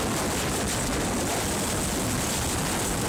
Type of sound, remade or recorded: recorded